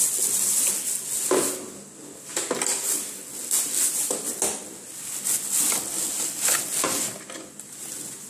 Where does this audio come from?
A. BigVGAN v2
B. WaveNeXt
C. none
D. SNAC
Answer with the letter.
C